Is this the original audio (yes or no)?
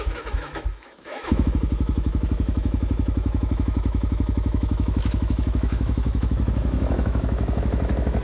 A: no